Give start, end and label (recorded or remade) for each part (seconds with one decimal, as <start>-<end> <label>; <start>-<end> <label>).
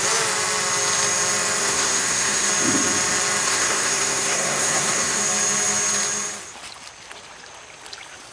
0.0-1.6 recorded; 1.6-2.5 remade; 2.5-3.4 recorded; 3.4-5.2 remade; 5.2-8.3 recorded